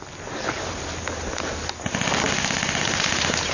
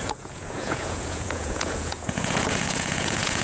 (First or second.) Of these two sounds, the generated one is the second